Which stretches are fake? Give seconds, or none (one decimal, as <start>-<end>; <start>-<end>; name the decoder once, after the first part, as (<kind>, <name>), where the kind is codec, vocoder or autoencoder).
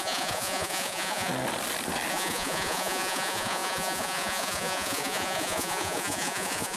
0.0-1.3 (vocoder, Vocos); 2.1-6.8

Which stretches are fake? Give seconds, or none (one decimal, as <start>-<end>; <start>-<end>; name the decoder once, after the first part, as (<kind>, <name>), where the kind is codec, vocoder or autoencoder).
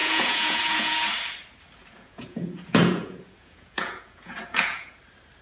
0.0-1.1 (vocoder, Vocos); 1.8-5.0